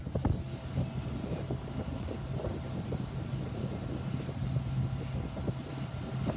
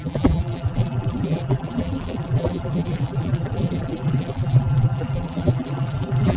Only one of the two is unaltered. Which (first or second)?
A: first